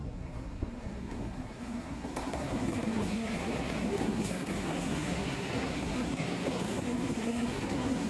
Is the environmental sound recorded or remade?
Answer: remade